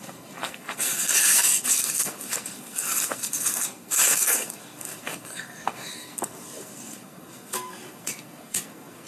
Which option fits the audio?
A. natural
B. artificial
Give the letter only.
B